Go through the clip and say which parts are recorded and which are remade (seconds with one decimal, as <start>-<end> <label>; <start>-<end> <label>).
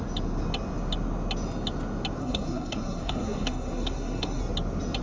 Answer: 0.0-2.2 recorded; 2.2-4.4 remade; 4.4-5.0 recorded